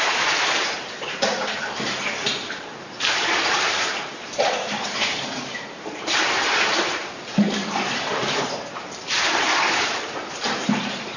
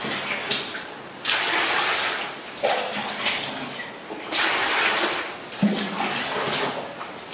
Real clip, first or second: second